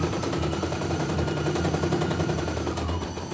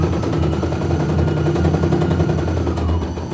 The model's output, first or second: first